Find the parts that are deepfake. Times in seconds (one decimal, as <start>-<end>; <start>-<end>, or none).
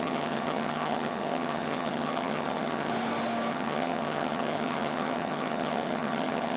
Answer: 0.0-2.9; 3.5-6.6